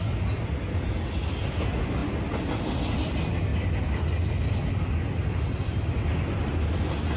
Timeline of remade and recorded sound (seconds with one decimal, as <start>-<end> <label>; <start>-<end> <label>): 0.0-7.2 recorded